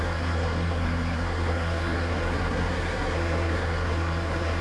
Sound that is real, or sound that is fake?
fake